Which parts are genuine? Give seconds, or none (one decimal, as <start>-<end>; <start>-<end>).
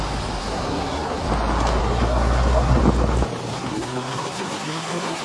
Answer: 0.0-0.4; 1.2-1.8; 2.8-3.5